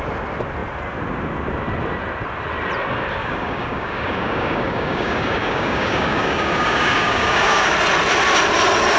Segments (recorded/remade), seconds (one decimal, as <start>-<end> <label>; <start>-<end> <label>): 0.0-3.2 recorded; 3.2-7.7 remade; 7.7-9.0 recorded